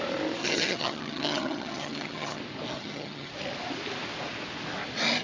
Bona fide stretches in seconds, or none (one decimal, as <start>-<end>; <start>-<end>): 0.0-0.4; 2.4-2.8; 3.3-5.2